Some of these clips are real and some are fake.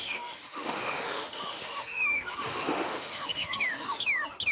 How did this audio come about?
fake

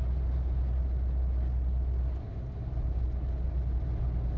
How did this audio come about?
real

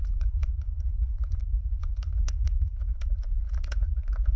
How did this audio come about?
fake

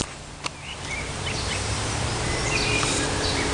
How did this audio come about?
fake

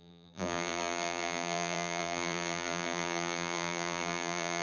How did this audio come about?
fake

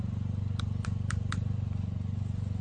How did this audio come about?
real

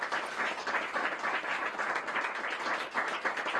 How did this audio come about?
real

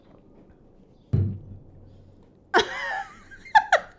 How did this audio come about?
real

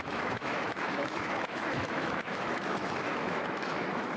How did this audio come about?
fake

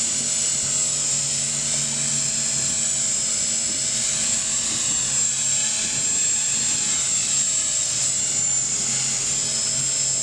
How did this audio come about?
real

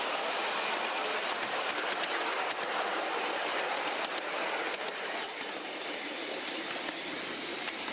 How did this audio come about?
real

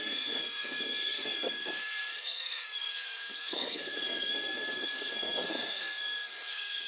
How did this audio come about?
fake